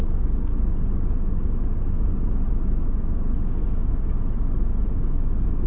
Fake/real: real